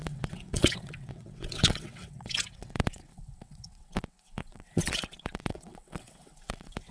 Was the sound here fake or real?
fake